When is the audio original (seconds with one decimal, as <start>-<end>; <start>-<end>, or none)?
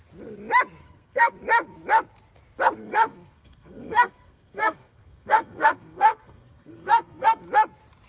0.0-0.8; 1.3-2.8; 7.4-8.1